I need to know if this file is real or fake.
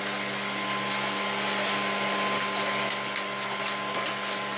real